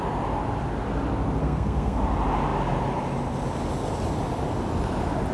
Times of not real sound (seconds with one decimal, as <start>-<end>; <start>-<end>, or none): 1.4-2.0